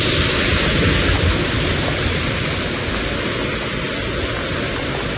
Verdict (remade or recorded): recorded